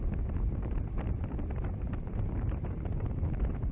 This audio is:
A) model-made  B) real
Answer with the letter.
A